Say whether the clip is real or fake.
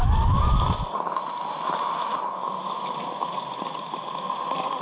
real